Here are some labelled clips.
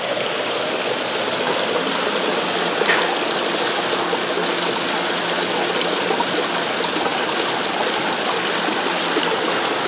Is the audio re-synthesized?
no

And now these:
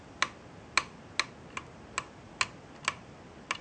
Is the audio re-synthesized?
no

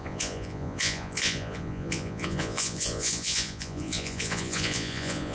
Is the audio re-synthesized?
yes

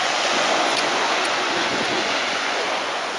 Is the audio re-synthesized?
yes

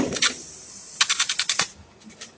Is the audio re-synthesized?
no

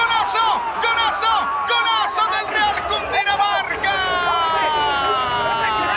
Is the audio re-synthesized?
no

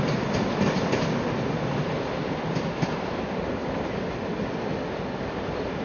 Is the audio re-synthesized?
no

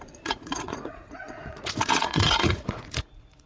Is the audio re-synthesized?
yes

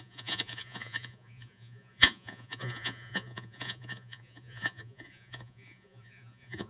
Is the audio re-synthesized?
yes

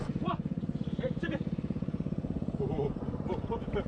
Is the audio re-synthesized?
yes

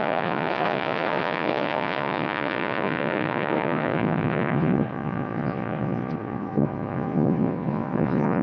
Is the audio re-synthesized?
yes